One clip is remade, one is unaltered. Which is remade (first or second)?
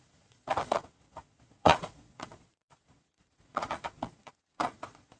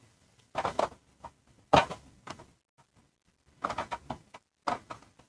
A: first